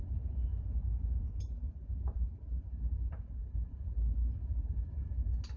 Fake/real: real